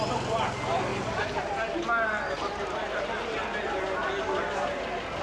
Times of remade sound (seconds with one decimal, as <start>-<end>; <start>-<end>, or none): none